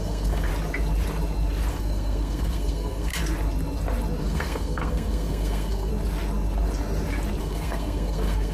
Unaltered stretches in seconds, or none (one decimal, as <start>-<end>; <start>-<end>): 0.5-1.7; 3.1-4.2; 5.9-7.4